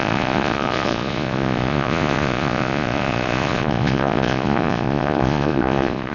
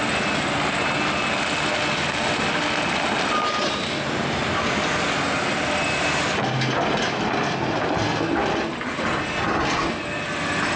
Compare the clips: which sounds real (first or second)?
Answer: second